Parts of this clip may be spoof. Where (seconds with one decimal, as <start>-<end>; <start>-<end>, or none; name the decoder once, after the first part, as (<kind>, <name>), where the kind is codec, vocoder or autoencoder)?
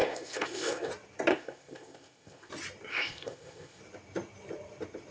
0.0-0.9 (codec, ZipCodec); 1.3-2.5; 2.9-3.8